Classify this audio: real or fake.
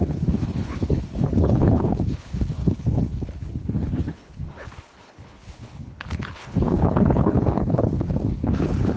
fake